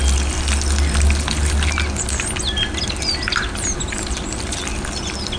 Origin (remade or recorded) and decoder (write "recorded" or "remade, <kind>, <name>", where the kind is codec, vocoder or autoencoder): recorded